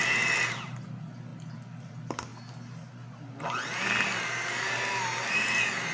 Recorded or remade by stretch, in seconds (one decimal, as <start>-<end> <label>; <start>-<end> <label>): 0.0-2.3 remade; 2.3-2.9 recorded; 2.9-5.9 remade